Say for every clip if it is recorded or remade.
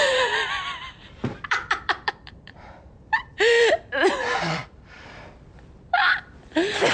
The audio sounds remade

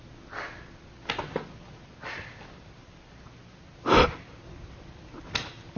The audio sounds recorded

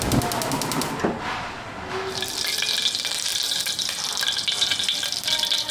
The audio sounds recorded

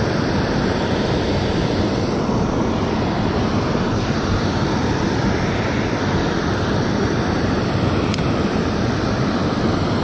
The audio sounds remade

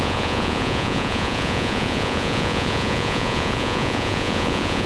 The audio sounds remade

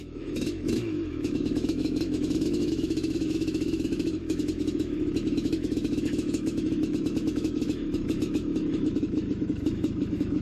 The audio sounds remade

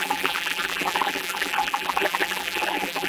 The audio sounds remade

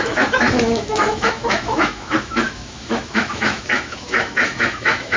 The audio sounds remade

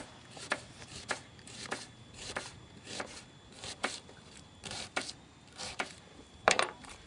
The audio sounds remade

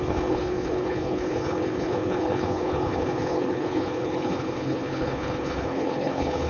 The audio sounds remade